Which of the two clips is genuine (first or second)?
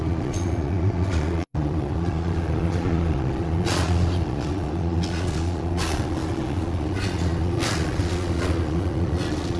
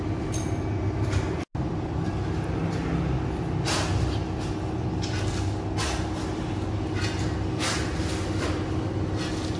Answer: second